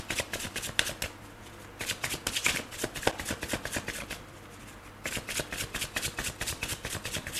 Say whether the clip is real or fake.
fake